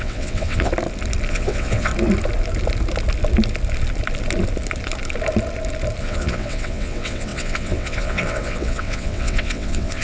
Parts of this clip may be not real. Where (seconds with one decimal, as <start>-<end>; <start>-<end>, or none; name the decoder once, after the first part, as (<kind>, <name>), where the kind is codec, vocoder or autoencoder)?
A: 0.0-0.7 (vocoder, WaveNeXt); 1.3-1.9; 6.0-10.0